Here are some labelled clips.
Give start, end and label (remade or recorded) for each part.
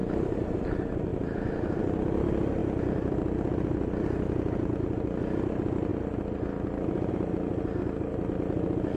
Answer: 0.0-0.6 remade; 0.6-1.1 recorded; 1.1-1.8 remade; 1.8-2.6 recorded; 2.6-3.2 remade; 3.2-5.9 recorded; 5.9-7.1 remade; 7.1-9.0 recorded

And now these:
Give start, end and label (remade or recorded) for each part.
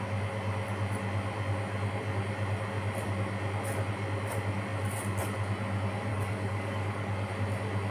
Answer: 0.0-6.1 recorded; 6.1-7.3 remade; 7.3-7.9 recorded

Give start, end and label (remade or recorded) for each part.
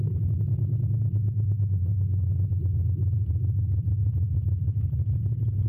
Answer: 0.0-1.9 remade; 1.9-2.8 recorded; 2.8-5.7 remade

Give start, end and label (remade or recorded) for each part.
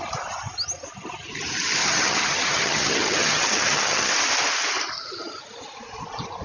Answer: 0.0-1.8 recorded; 1.8-4.1 remade; 4.1-6.4 recorded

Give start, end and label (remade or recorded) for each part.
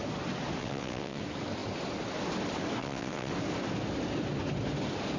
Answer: 0.0-0.6 recorded; 0.6-1.2 remade; 1.2-2.8 recorded; 2.8-3.3 remade; 3.3-5.2 recorded